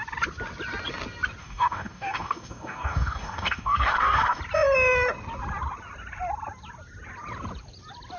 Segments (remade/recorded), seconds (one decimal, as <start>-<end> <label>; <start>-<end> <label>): 0.0-1.4 recorded; 1.4-4.4 remade; 4.4-8.2 recorded